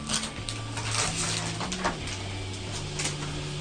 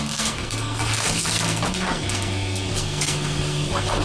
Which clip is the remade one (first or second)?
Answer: second